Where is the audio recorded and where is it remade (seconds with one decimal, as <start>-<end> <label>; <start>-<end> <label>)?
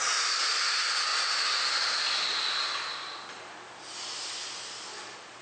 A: 0.0-5.4 recorded